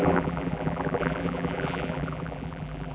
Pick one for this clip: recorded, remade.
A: remade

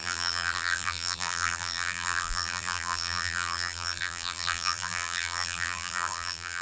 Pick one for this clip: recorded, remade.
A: remade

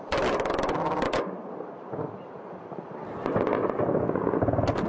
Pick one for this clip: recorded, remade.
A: recorded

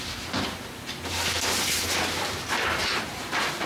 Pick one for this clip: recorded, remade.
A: recorded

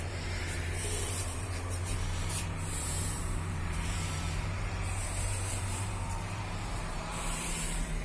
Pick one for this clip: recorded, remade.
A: remade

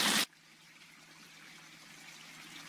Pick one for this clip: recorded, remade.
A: recorded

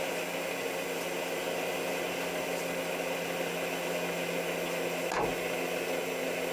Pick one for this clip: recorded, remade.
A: recorded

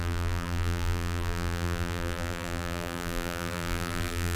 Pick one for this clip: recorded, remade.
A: remade